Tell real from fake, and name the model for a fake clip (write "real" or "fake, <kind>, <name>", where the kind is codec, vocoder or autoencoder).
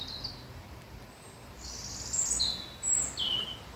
real